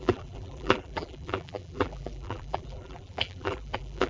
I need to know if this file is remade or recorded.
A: remade